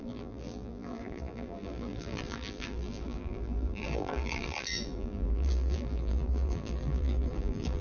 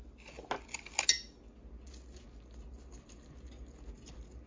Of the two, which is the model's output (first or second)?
first